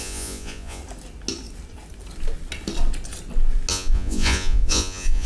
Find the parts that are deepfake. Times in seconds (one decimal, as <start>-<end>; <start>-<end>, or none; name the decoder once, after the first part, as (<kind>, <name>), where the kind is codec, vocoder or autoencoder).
0.0-0.8 (vocoder, Vocos); 3.7-5.3

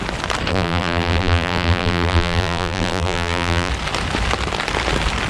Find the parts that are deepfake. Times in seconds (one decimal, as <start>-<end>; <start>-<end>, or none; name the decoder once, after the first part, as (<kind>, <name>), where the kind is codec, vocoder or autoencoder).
0.5-3.7 (vocoder, BigVGAN v2)

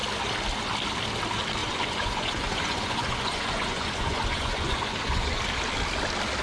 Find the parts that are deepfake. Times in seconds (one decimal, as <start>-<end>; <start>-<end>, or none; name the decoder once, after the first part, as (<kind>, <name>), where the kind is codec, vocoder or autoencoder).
1.6-5.4 (vocoder, Vocos)

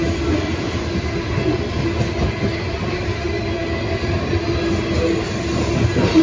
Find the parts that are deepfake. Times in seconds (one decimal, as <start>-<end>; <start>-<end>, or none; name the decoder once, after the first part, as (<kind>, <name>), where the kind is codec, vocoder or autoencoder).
none

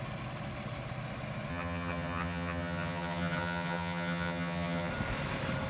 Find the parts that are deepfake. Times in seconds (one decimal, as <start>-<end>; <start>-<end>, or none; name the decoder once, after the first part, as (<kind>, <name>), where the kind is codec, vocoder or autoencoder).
1.5-4.9 (vocoder, HiFi-GAN)